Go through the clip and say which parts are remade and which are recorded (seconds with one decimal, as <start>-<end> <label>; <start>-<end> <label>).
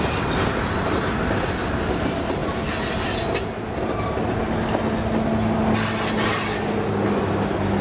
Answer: 0.0-7.8 recorded